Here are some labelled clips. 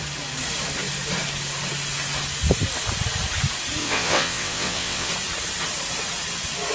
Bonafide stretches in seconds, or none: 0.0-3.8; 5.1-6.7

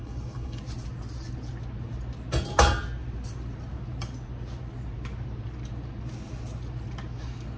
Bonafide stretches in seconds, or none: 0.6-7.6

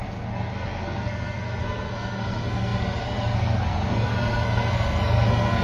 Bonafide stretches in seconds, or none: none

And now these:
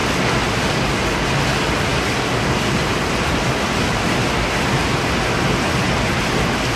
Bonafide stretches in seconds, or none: 0.0-6.8